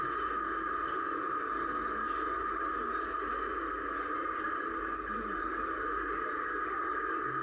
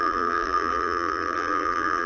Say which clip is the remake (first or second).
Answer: second